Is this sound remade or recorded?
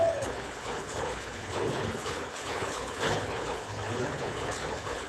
remade